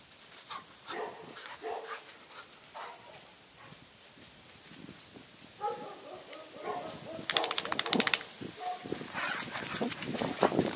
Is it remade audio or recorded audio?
recorded